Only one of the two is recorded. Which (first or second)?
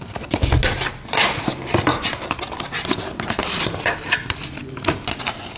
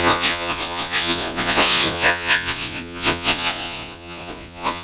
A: first